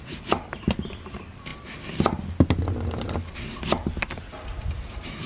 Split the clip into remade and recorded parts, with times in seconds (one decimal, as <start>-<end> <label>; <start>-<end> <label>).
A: 0.0-5.3 recorded